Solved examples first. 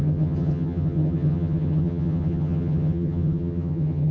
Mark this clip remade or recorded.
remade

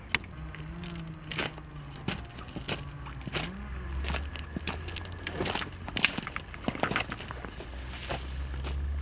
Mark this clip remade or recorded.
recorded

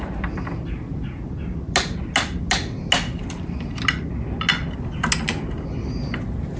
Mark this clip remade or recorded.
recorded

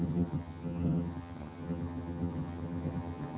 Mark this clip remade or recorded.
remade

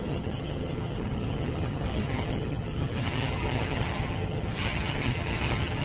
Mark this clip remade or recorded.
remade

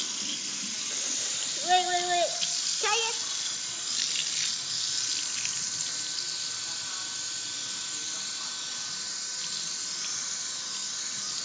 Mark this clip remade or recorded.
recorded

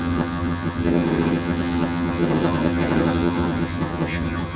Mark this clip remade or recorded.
remade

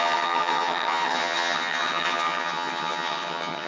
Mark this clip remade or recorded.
remade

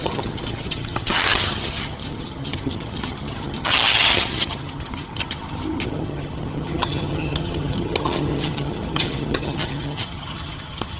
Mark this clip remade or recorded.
remade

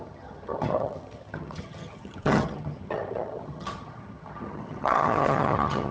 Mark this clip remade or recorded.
remade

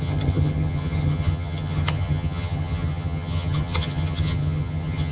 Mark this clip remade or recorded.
remade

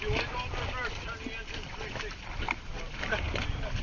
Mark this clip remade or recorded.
recorded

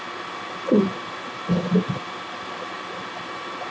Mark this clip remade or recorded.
recorded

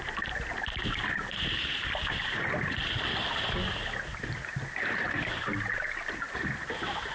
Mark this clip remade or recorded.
recorded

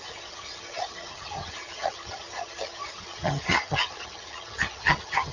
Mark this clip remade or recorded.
remade